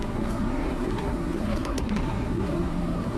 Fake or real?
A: fake